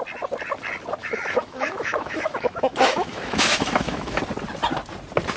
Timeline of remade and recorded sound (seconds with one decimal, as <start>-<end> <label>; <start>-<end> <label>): 0.0-1.0 recorded; 1.0-4.2 remade; 4.2-5.4 recorded